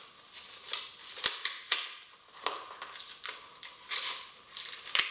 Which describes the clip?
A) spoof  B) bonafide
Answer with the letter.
B